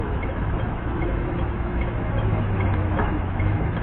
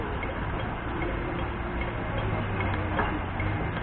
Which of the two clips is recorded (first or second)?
second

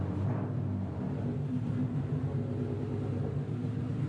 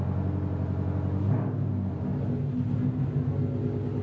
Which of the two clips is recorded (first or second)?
second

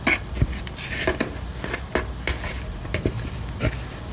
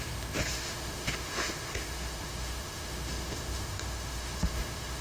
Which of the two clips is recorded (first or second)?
first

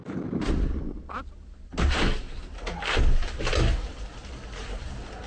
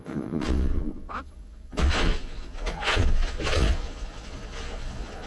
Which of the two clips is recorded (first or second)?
first